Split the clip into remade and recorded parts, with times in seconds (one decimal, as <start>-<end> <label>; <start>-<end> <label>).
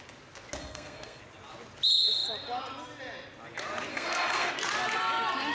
0.0-0.6 recorded; 0.6-1.2 remade; 1.2-3.9 recorded; 3.9-4.5 remade; 4.5-5.5 recorded